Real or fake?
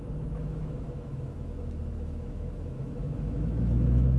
fake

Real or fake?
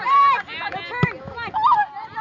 real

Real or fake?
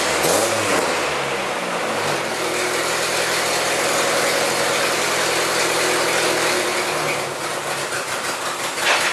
real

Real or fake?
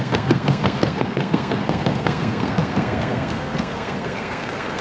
fake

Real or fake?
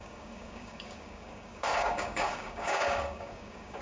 fake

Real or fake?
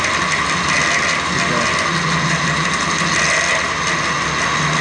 real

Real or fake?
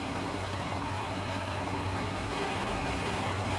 fake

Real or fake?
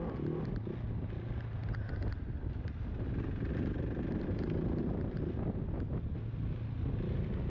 real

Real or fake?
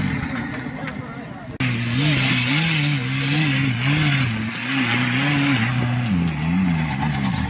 real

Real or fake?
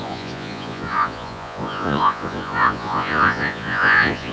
fake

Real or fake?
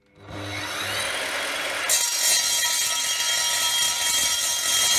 real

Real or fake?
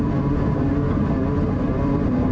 real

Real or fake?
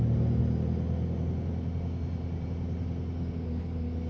real